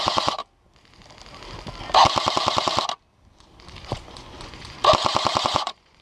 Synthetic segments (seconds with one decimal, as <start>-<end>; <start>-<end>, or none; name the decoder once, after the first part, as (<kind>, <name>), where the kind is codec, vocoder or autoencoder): 0.0-0.4 (vocoder, Vocos); 3.8-4.8; 5.4-6.0